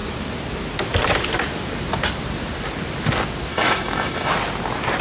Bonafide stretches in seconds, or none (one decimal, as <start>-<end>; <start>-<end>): 0.0-3.5; 4.3-5.0